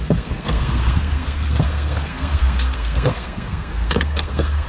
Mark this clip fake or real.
fake